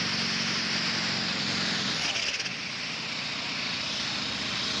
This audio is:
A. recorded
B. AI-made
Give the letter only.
A